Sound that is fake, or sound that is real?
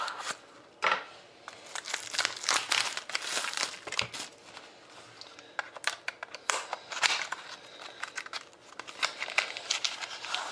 real